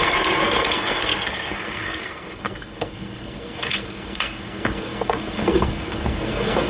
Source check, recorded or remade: remade